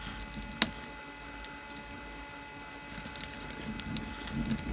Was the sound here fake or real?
real